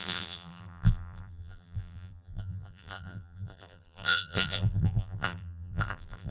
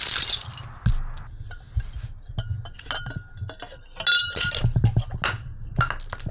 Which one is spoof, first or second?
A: first